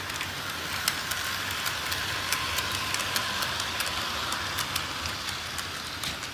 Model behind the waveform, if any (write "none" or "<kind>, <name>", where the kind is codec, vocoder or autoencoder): none